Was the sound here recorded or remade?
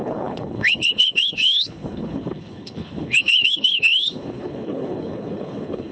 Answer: remade